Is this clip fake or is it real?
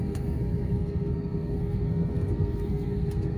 fake